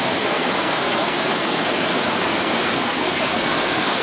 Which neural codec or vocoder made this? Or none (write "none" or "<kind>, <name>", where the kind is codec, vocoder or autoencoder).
codec, SNAC